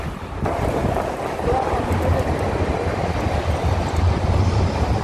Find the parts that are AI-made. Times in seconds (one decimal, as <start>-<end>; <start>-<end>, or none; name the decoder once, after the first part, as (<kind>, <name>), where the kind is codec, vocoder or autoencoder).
none